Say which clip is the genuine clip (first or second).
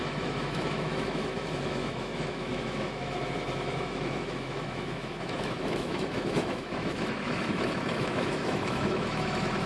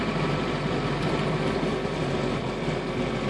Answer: second